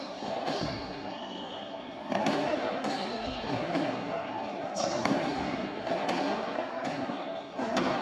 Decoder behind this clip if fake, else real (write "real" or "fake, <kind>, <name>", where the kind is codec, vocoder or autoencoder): fake, codec, SNAC